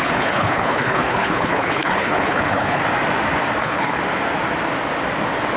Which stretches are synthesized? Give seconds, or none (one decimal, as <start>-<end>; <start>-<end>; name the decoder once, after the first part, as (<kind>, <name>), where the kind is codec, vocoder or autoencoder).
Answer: 0.0-2.8 (codec, HILCodec); 3.6-4.0